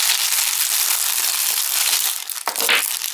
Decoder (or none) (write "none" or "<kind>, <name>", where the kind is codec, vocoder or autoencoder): none